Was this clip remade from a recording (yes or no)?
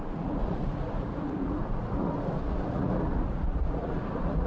yes